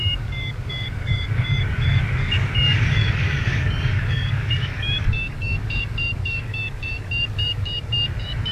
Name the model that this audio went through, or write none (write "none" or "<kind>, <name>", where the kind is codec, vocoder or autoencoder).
codec, DAC